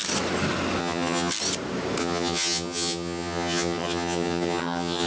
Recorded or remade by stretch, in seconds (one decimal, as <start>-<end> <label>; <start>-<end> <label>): 0.0-0.8 recorded; 0.8-1.3 remade; 1.3-2.0 recorded; 2.0-5.1 remade